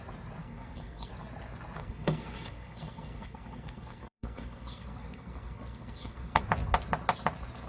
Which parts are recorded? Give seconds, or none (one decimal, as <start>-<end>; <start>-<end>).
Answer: 0.0-0.4; 1.1-1.8; 6.4-7.7